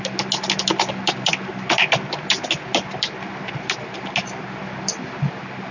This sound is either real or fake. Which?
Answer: real